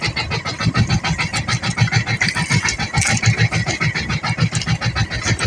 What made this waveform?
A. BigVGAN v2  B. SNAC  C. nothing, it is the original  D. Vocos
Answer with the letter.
C